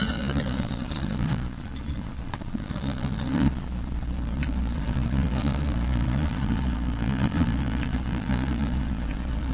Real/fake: fake